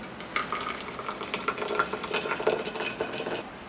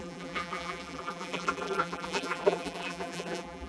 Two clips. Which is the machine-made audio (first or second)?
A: second